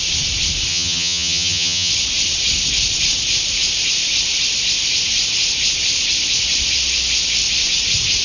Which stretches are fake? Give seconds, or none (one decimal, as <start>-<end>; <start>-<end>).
0.7-1.9